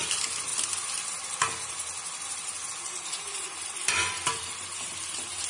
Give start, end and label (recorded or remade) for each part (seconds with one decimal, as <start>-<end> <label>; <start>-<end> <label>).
0.0-0.5 remade; 0.5-2.8 recorded; 2.8-5.5 remade